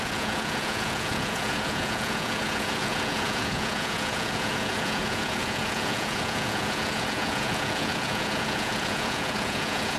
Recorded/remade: remade